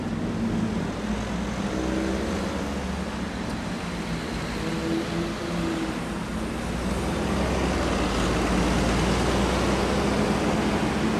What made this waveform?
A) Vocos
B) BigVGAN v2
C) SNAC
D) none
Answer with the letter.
D